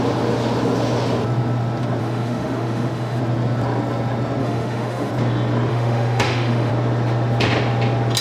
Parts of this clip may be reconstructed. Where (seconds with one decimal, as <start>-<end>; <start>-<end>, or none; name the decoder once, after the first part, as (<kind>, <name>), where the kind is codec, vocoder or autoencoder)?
2.0-3.2 (autoencoder, DAC-VAE); 4.4-5.1; 5.7-6.7